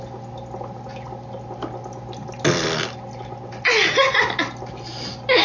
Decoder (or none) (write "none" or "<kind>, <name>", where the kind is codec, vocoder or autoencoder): none